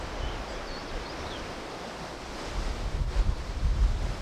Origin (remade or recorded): recorded